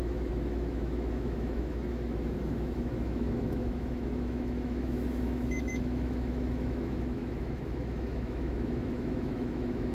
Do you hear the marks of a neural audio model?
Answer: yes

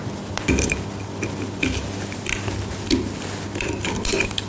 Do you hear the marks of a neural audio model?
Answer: no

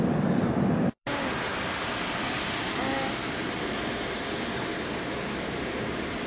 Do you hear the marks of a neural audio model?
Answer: no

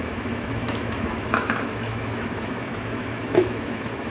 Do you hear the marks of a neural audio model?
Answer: yes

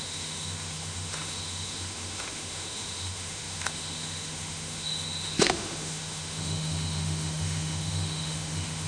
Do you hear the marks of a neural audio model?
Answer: yes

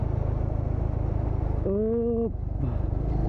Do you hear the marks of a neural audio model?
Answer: no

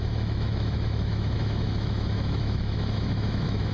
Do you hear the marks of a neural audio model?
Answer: yes